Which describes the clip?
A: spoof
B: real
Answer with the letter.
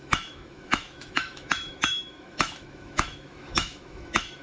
A